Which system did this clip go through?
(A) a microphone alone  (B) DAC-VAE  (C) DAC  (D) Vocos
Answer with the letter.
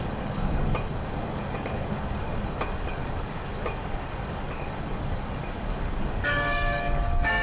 C